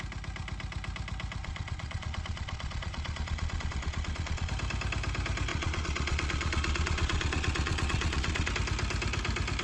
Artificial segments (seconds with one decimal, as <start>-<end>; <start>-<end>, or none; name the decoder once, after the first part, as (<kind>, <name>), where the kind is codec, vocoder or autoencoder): 1.4-4.5 (vocoder, Vocos); 5.5-8.5